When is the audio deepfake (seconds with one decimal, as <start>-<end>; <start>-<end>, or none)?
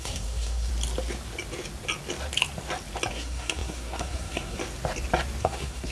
0.0-0.7; 3.1-4.6; 5.4-5.9